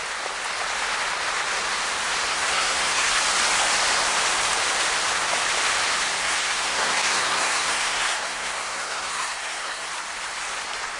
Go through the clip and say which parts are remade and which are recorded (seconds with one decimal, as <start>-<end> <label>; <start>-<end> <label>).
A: 0.0-2.3 recorded; 2.3-3.1 remade; 3.1-6.2 recorded; 6.2-9.9 remade; 9.9-11.0 recorded